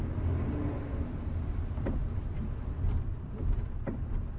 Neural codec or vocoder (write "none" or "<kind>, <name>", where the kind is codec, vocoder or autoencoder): none